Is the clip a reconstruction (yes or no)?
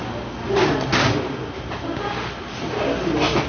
no